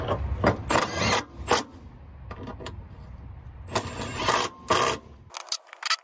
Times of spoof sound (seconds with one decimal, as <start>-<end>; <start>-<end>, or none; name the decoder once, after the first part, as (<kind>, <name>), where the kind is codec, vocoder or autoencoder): none